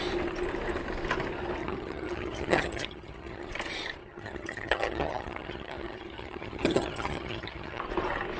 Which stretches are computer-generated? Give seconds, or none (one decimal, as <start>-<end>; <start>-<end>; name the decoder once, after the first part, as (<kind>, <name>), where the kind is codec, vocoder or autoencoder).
1.6-3.5 (vocoder, HiFi-GAN); 4.0-7.8